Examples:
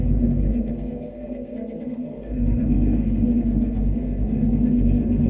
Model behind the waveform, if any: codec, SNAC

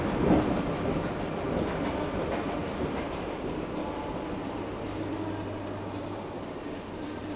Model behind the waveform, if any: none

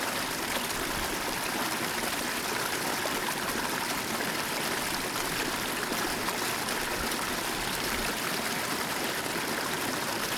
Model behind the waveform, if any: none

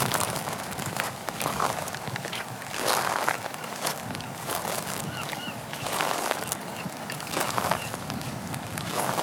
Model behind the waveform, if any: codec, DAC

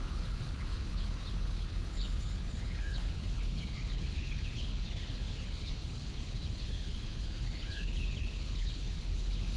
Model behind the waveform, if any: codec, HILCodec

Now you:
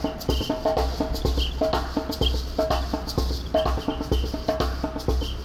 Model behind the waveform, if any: none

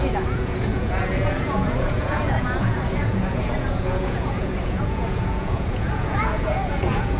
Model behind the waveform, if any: vocoder, Vocos